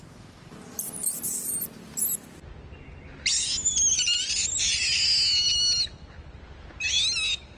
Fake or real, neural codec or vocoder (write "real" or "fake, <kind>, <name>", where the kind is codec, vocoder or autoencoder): real